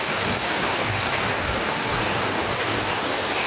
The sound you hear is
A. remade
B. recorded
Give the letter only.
A